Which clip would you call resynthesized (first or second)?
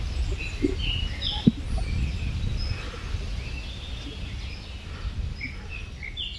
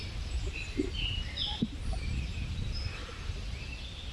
second